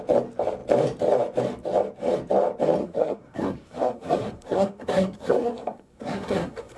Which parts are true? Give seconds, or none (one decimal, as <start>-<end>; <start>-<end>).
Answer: 0.0-2.8